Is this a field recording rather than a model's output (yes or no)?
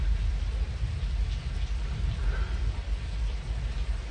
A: yes